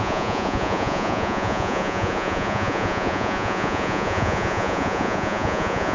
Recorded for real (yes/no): no